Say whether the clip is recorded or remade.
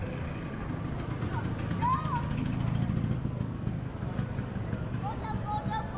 recorded